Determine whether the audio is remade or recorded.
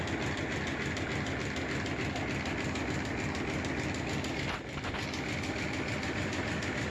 recorded